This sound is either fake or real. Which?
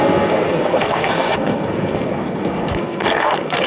fake